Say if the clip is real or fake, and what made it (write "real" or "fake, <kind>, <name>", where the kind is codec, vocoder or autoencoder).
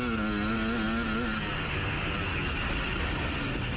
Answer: real